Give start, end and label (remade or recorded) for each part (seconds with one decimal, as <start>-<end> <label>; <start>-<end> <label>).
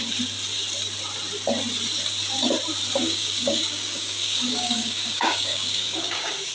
0.0-3.0 recorded; 3.0-6.5 remade